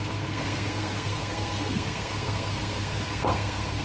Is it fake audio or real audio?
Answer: fake